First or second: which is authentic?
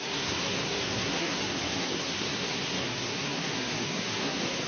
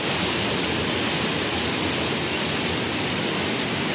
second